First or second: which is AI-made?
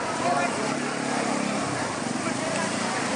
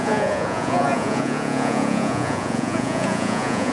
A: second